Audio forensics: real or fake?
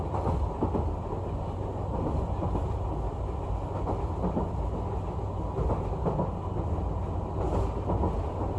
real